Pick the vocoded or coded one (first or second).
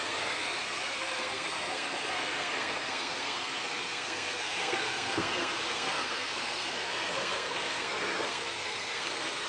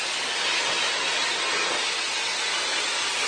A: first